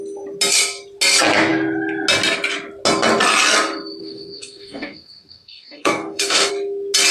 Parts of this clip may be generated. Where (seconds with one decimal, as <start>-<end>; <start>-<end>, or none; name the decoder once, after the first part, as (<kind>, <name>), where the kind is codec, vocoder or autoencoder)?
4.0-6.5 (codec, DAC)